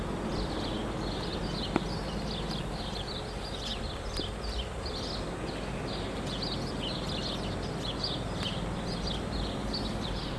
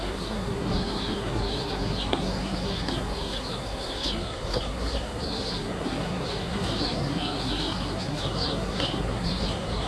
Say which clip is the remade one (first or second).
second